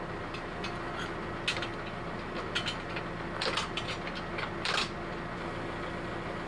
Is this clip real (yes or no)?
yes